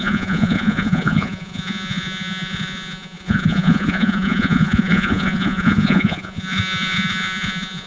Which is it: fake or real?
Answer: fake